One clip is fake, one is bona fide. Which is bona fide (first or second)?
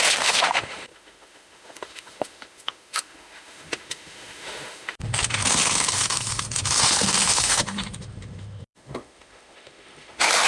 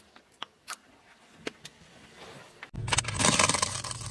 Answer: second